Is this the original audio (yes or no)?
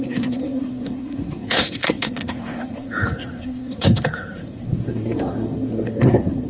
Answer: no